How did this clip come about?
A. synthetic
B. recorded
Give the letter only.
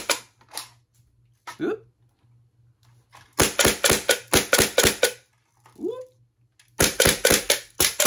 B